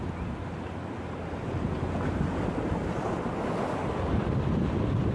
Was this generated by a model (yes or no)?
no